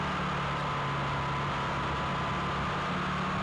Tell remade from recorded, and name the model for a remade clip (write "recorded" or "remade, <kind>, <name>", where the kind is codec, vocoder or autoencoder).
recorded